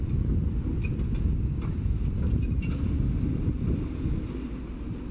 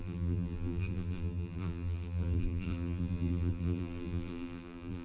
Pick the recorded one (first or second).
first